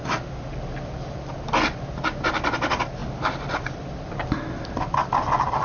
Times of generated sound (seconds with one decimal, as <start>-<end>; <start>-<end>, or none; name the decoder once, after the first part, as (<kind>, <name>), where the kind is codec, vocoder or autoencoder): 3.0-4.1 (vocoder, BigVGAN v2)